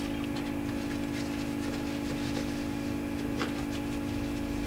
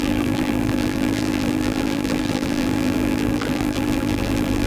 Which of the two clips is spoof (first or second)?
second